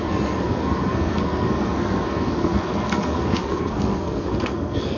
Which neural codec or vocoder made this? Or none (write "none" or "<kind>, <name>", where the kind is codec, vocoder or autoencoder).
codec, SNAC